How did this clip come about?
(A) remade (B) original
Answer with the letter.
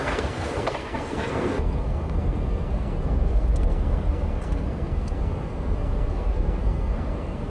A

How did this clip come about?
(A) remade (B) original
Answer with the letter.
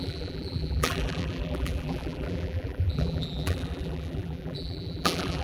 A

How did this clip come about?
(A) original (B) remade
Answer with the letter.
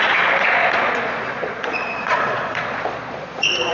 B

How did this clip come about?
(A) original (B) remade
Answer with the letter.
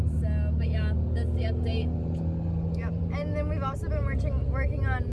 A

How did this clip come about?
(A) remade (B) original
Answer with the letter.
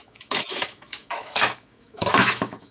A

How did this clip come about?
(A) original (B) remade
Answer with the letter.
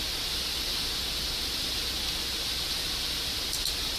A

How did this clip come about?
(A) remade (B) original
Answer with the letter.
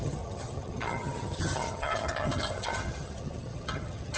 A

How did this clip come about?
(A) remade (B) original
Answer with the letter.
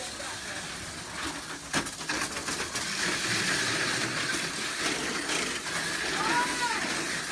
B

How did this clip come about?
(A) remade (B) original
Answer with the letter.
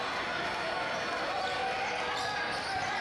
B